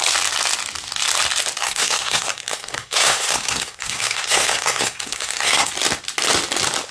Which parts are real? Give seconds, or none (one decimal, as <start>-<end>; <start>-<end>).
0.0-1.6; 5.7-6.9